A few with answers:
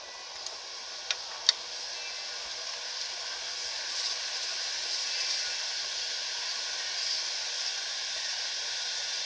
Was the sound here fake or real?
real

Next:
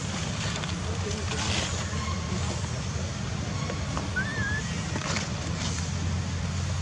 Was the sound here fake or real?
real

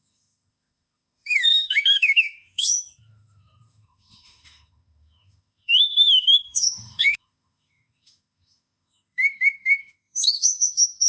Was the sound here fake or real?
fake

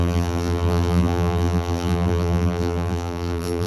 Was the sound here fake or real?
fake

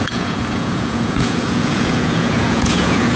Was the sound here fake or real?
fake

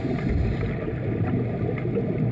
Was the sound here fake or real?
fake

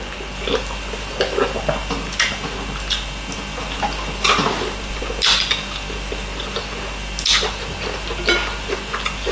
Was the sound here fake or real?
real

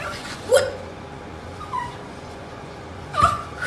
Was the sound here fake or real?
fake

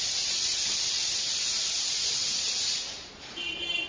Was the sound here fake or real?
real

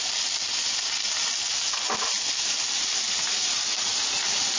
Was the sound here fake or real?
real